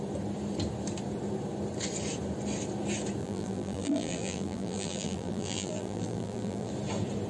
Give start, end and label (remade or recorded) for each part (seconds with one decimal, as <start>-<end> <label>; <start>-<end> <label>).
0.0-3.2 recorded; 3.2-6.7 remade; 6.7-7.3 recorded